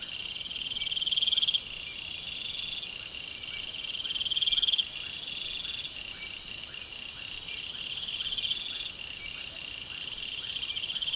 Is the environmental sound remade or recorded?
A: recorded